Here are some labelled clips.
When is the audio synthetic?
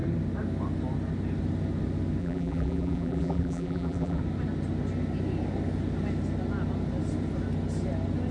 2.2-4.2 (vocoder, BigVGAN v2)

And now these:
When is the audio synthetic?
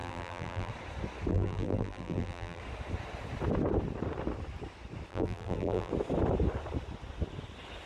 0.0-0.7 (vocoder, BigVGAN v2); 1.3-2.6; 5.1-5.9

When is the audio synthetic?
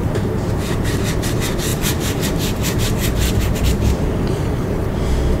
0.0-0.8 (vocoder, BigVGAN v2); 1.7-4.9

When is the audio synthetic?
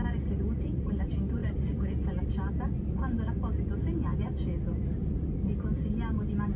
none